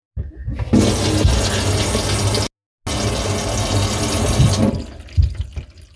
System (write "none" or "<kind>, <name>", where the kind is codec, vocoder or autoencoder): none